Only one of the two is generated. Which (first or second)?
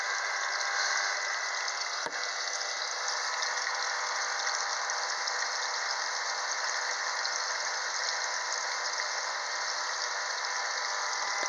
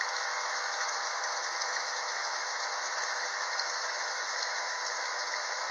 second